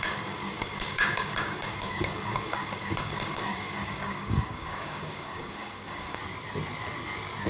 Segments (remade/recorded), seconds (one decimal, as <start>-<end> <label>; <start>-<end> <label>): 0.0-6.2 remade; 6.2-7.5 recorded